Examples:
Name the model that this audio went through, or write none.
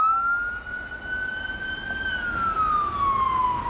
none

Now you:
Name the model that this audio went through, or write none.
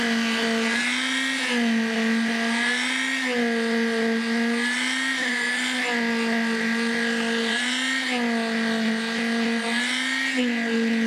none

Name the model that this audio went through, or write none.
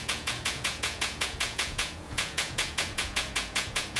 vocoder, Vocos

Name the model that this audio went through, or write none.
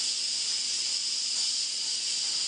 none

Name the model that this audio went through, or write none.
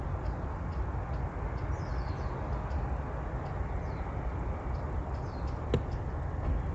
none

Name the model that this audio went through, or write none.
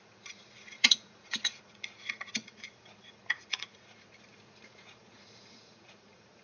vocoder, Vocos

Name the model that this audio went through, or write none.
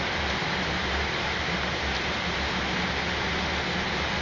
none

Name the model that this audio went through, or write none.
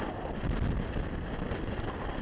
none